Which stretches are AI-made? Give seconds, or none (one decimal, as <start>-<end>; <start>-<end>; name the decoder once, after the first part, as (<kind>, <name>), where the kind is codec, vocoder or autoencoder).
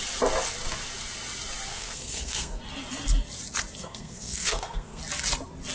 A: 1.7-2.6 (codec, SNAC); 3.8-5.0